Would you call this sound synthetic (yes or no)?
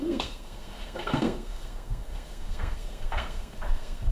yes